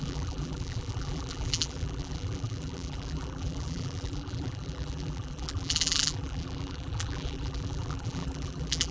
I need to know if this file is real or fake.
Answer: fake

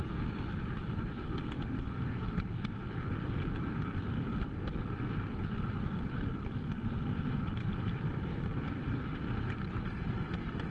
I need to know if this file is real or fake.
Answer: real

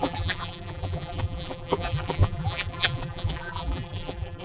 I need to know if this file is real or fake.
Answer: fake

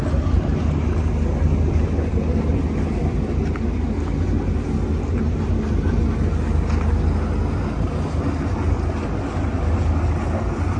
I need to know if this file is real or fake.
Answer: real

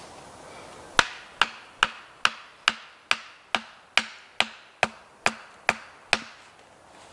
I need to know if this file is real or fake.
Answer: real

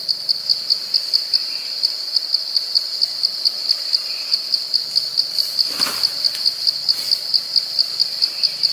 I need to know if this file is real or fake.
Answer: real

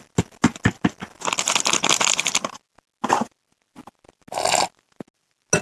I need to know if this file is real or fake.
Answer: real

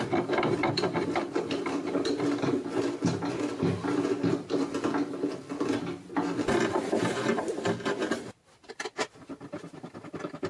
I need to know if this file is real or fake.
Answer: fake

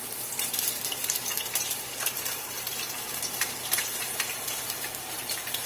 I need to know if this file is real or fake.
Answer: fake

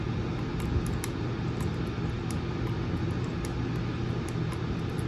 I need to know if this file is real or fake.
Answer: real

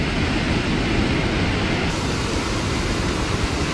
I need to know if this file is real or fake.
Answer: real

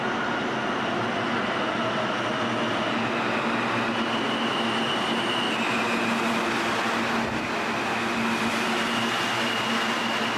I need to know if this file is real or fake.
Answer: real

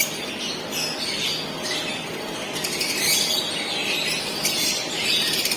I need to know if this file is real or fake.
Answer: real